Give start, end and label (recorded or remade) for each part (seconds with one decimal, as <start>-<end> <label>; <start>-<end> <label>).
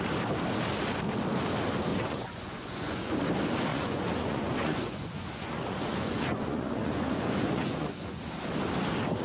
0.0-1.9 recorded; 1.9-3.2 remade; 3.2-3.7 recorded; 3.7-8.3 remade; 8.3-9.2 recorded